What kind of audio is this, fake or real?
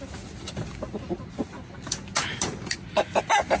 real